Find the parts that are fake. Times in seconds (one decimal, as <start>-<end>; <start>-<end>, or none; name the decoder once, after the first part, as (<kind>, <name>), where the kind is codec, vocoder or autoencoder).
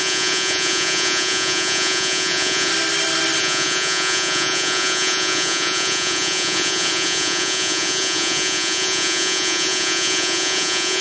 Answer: 0.0-2.7 (vocoder, Vocos); 3.4-11.0